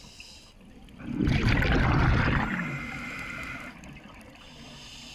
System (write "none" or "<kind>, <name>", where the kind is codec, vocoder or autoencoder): none